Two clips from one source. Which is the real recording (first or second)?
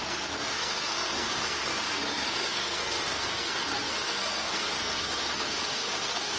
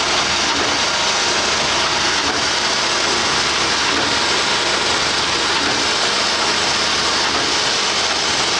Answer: second